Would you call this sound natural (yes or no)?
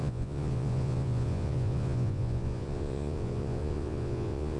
no